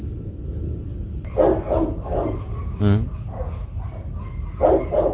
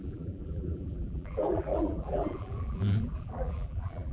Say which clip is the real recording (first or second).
first